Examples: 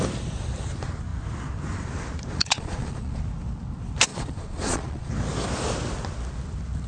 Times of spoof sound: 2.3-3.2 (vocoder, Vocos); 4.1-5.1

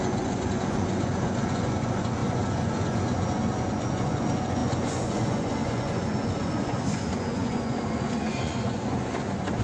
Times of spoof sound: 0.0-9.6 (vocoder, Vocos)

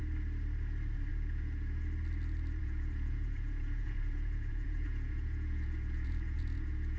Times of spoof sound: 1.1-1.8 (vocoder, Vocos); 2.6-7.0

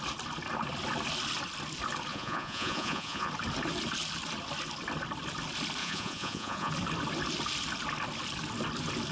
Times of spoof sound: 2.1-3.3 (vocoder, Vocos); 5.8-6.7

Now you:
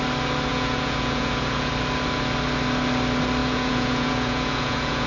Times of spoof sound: 0.5-1.7 (vocoder, Vocos); 3.4-5.1